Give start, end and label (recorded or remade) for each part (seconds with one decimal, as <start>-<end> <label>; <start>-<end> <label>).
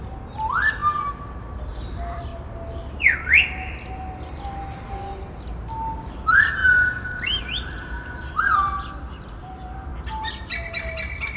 0.0-0.8 remade; 0.8-1.7 recorded; 1.7-2.3 remade; 2.3-6.1 recorded; 6.1-6.6 remade; 6.6-7.4 recorded; 7.4-9.9 remade; 9.9-10.7 recorded; 10.7-11.4 remade